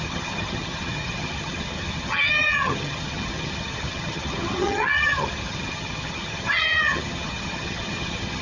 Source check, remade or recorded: remade